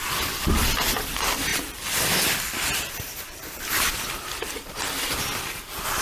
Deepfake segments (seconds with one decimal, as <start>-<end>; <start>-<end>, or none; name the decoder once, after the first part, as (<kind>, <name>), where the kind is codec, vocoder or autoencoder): 1.5-4.8 (vocoder, BigVGAN v2)